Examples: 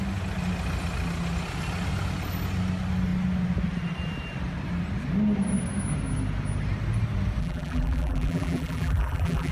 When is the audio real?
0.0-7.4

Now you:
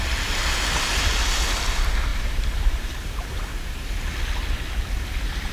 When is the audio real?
0.0-2.1; 3.8-5.5

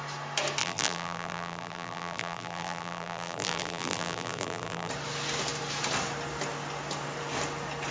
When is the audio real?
0.0-0.6; 4.9-7.9

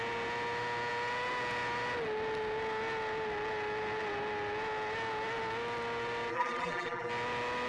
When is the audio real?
0.0-6.3; 7.1-7.7